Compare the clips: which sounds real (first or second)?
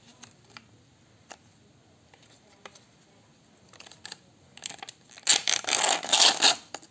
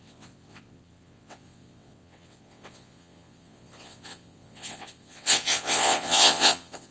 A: first